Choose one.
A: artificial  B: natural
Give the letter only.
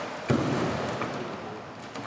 B